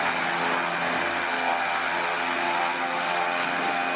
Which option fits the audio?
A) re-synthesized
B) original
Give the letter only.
B